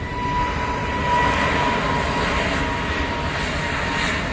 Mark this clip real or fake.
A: real